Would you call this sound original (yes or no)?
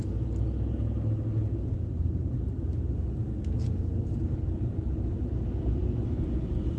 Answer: yes